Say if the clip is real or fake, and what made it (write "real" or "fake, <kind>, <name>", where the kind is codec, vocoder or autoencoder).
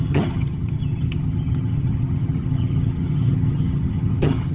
fake, vocoder, HiFi-GAN